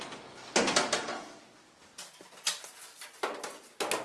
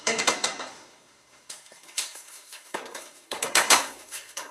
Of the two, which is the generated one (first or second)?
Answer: second